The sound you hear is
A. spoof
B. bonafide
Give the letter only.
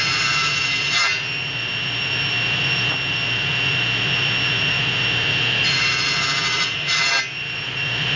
B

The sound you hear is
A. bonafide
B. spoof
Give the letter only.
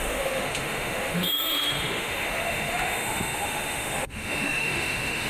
B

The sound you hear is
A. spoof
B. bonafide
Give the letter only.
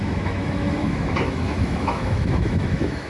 A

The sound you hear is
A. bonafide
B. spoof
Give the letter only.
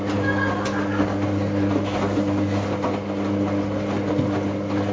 A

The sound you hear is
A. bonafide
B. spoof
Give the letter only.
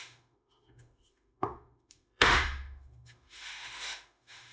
B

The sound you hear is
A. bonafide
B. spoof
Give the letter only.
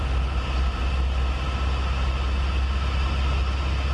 A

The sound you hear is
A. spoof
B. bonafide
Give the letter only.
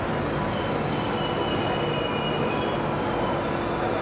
B